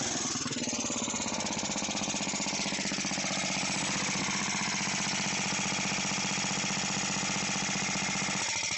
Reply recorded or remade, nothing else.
recorded